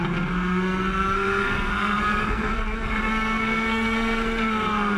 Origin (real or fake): fake